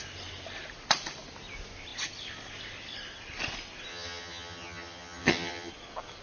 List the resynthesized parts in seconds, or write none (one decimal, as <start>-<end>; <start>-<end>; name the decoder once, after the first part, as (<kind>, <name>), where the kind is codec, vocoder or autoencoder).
3.9-5.7 (vocoder, HiFi-GAN)